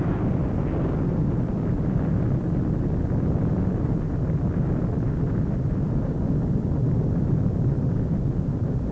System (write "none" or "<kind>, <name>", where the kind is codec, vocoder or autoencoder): none